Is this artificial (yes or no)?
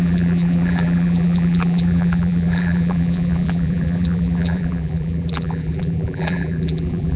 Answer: yes